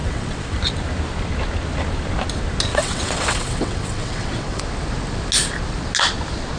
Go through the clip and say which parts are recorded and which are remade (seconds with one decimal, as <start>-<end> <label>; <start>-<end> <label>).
0.0-0.6 remade; 0.6-2.7 recorded; 2.7-4.6 remade; 4.6-6.6 recorded